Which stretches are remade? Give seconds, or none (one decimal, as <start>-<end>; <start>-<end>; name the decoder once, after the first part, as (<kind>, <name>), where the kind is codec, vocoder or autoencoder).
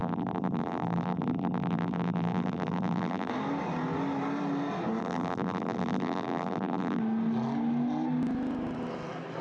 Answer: 0.0-3.3 (vocoder, BigVGAN v2); 5.0-7.0